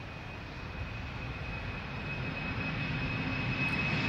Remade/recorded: recorded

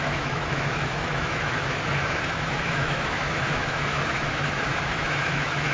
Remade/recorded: remade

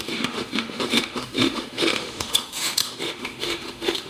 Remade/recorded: remade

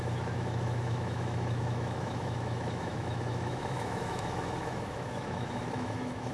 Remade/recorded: remade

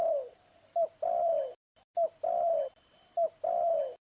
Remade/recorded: recorded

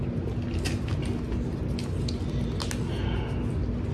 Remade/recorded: recorded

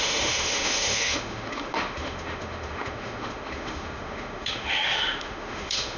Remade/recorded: remade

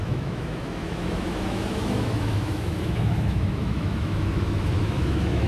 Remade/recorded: remade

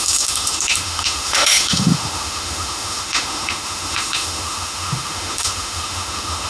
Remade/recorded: remade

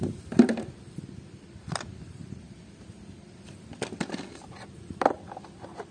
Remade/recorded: recorded